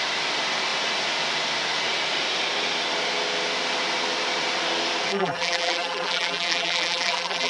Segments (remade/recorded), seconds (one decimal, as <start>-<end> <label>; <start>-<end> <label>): 0.0-5.1 recorded; 5.1-7.5 remade